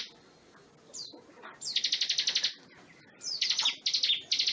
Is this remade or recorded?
recorded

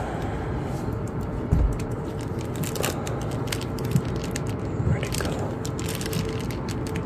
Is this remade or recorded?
recorded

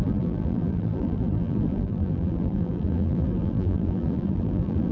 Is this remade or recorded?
remade